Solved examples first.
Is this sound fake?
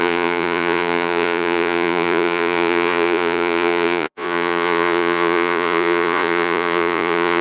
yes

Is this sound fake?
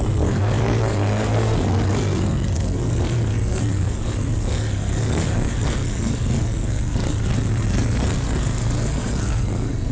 yes